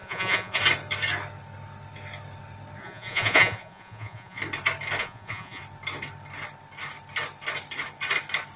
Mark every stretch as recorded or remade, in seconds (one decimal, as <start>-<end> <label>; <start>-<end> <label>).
0.0-0.6 remade; 0.6-2.8 recorded; 2.8-4.4 remade; 4.4-5.0 recorded; 5.0-5.6 remade; 5.6-8.6 recorded